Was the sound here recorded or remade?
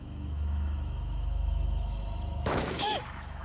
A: remade